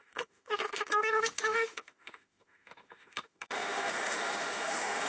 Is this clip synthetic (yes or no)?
yes